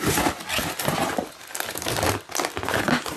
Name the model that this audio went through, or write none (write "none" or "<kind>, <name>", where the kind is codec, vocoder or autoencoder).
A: none